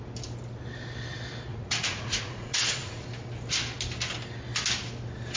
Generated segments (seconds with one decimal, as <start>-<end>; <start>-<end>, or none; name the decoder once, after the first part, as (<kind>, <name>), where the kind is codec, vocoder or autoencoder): 1.5-3.0 (vocoder, Vocos)